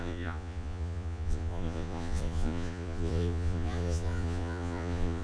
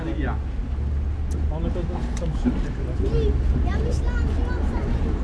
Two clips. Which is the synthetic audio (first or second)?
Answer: first